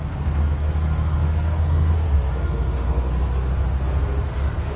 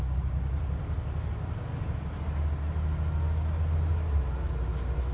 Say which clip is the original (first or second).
second